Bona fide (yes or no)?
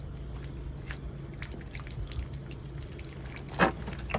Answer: yes